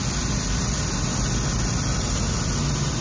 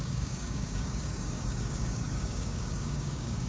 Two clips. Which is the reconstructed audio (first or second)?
second